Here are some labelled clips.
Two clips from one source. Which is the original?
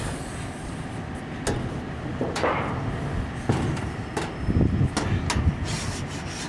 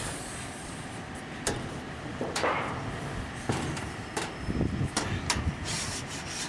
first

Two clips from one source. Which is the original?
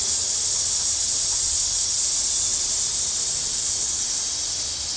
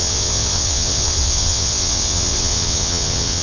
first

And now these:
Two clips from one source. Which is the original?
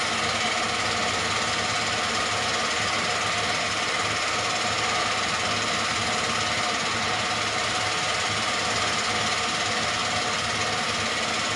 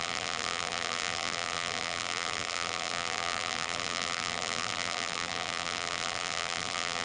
first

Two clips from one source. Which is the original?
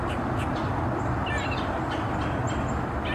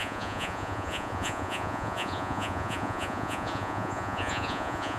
first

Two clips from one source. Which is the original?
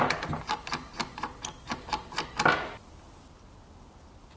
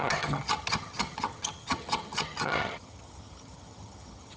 first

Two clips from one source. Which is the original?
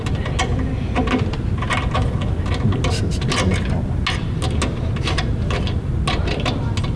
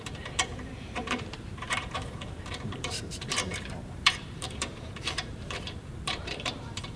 first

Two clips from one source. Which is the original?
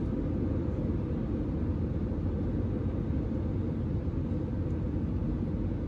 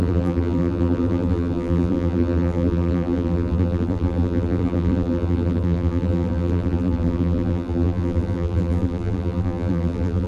first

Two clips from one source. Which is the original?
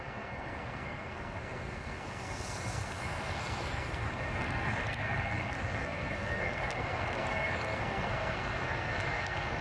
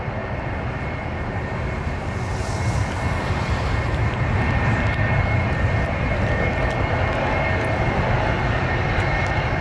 second